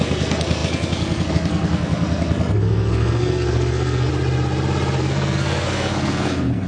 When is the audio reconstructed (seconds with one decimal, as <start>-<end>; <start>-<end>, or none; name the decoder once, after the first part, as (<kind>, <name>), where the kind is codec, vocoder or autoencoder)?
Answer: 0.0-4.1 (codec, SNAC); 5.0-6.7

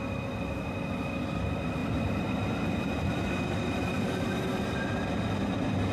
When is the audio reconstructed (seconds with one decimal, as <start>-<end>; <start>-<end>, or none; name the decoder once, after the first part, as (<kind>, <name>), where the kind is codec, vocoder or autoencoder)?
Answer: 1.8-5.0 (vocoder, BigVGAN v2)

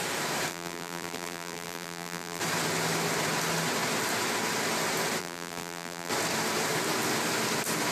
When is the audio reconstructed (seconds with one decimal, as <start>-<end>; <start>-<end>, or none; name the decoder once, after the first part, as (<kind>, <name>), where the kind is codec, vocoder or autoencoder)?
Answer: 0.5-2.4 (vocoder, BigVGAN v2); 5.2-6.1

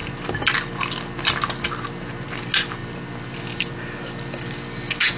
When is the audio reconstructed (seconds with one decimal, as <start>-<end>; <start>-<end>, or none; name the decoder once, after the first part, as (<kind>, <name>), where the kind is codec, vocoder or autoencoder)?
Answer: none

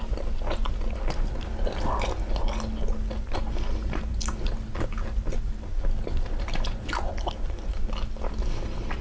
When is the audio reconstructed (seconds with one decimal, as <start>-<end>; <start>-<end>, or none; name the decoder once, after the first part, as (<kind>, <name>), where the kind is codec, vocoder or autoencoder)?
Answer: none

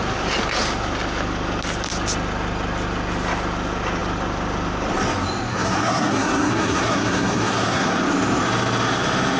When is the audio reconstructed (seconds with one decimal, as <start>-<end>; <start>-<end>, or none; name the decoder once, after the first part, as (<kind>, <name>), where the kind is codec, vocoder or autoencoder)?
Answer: 5.5-7.9 (codec, SNAC)

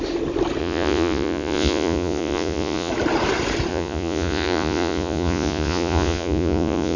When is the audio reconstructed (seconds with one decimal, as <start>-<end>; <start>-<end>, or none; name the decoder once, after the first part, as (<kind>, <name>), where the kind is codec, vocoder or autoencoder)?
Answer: 0.6-2.9 (vocoder, Vocos); 3.7-7.0

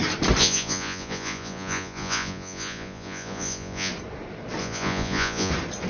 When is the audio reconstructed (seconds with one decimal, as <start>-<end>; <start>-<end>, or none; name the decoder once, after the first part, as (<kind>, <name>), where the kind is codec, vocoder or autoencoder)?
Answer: 0.4-3.9 (vocoder, Vocos); 4.6-5.5